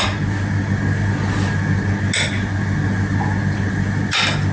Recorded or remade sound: recorded